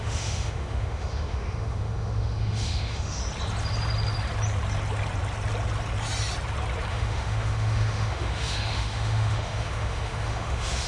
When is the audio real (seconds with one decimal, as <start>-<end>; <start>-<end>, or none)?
3.2-6.9